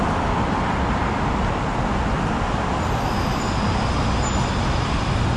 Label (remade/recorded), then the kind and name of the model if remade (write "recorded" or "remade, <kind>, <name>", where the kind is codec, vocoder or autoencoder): recorded